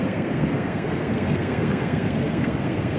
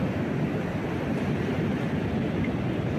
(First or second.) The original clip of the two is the second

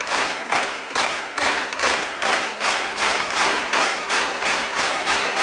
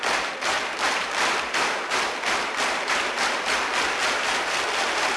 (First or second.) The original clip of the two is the second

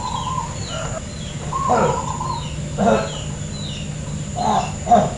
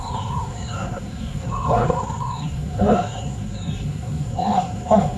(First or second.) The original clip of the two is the first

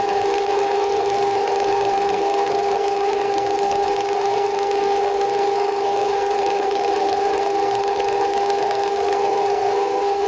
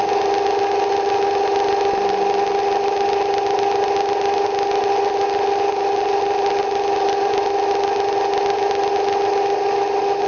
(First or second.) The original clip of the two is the second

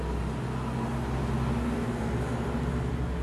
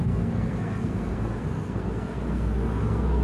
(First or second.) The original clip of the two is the first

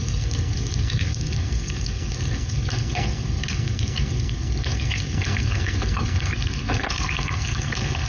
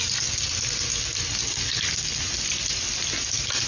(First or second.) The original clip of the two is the second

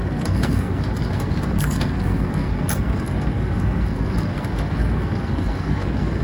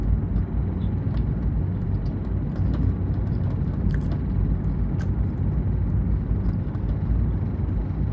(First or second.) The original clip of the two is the second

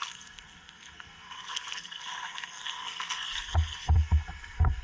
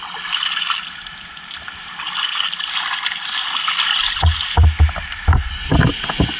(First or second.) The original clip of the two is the second